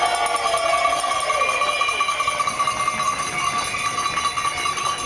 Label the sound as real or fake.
real